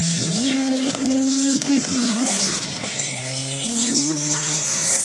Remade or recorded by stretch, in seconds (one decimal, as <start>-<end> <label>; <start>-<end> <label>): 0.0-5.0 remade